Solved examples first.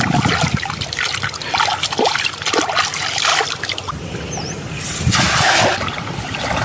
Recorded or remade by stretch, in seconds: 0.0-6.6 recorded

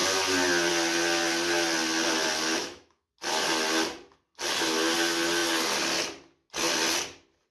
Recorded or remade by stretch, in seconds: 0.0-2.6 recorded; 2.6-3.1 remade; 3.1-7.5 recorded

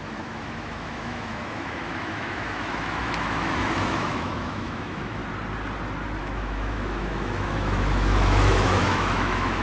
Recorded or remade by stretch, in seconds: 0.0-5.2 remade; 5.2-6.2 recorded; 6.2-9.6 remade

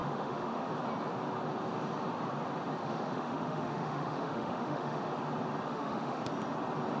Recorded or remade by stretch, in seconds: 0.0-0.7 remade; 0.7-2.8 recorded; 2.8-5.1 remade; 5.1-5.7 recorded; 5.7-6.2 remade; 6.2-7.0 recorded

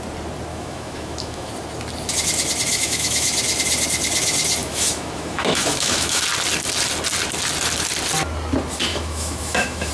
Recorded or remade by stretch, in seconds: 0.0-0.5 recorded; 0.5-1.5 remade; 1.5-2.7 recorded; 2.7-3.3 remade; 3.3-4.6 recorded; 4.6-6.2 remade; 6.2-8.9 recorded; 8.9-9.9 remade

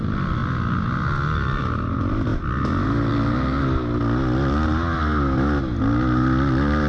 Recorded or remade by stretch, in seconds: 0.0-6.9 recorded

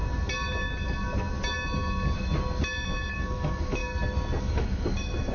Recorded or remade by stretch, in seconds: 0.0-3.2 recorded; 3.2-3.8 remade; 3.8-4.4 recorded; 4.4-5.3 remade

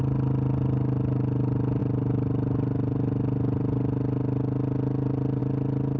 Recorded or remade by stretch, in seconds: 0.0-6.0 recorded